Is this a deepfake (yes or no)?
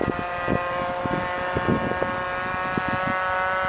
no